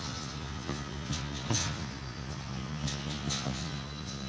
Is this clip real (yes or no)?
no